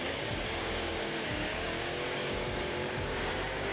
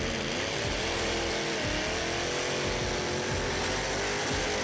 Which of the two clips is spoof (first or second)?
first